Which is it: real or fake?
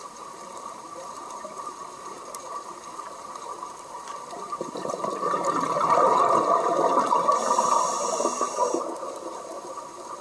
fake